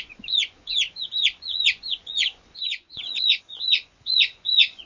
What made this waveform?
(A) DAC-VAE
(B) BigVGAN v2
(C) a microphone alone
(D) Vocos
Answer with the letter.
D